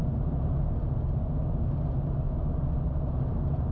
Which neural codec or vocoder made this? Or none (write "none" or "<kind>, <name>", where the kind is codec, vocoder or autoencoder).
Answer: none